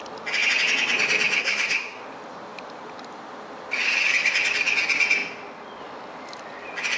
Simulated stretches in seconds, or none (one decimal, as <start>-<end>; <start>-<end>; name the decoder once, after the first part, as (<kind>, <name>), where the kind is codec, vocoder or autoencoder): 1.4-2.0 (codec, SNAC)